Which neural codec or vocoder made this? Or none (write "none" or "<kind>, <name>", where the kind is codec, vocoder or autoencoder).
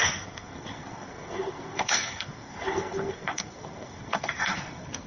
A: codec, SNAC